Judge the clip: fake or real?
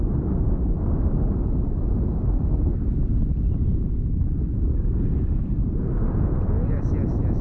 real